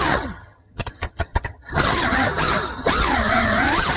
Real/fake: fake